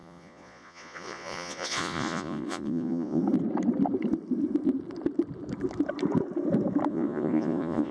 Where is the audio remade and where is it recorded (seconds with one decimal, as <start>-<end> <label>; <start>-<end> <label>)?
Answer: 0.0-3.2 remade; 3.2-6.9 recorded; 6.9-7.9 remade